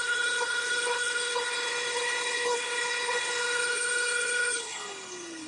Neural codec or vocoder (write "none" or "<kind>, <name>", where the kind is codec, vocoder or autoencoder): codec, HILCodec